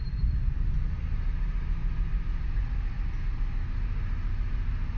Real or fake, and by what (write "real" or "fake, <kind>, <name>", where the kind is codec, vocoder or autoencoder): fake, vocoder, BigVGAN v2